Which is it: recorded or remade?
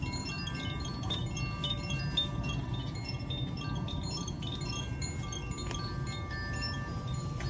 recorded